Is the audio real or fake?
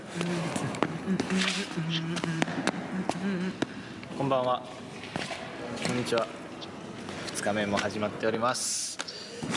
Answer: real